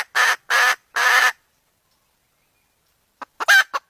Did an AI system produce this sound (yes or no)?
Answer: no